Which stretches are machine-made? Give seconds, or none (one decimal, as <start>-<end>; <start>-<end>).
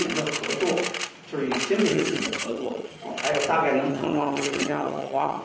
1.9-3.1; 3.9-5.4